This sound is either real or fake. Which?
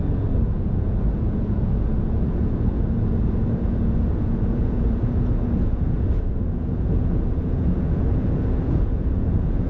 fake